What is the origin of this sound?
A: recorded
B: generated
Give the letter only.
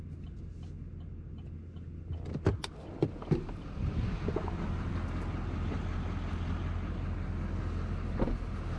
A